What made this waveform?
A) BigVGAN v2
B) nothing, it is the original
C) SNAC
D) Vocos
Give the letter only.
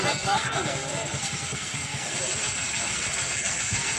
C